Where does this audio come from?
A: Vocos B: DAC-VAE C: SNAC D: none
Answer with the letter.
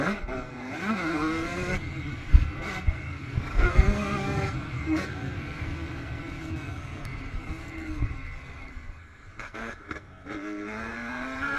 C